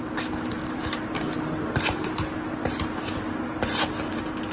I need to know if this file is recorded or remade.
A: recorded